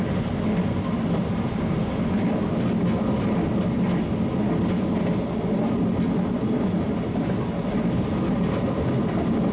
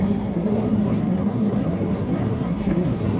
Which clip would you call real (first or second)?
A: first